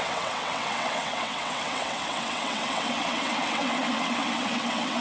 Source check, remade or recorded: remade